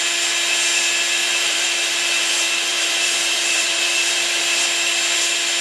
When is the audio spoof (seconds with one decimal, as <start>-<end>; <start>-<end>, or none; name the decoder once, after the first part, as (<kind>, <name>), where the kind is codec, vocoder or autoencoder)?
1.2-4.4 (vocoder, BigVGAN v2)